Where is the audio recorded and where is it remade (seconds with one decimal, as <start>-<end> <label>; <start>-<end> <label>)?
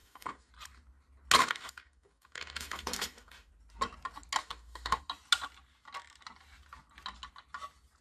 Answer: 0.0-0.5 remade; 0.5-1.4 recorded; 1.4-3.5 remade; 3.5-4.4 recorded; 4.4-5.0 remade; 5.0-8.0 recorded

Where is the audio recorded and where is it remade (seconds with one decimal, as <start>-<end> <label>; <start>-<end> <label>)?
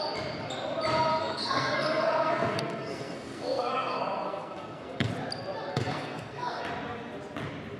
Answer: 0.0-1.1 recorded; 1.1-5.1 remade; 5.1-5.7 recorded; 5.7-6.6 remade; 6.6-7.8 recorded